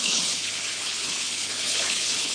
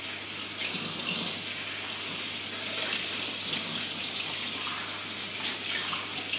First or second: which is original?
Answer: second